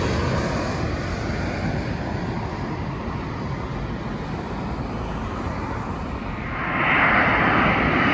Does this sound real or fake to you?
real